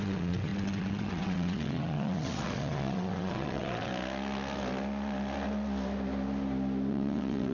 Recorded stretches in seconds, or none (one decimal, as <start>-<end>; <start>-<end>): 3.9-6.9